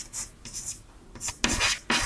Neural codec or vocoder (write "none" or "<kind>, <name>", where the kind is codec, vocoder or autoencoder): none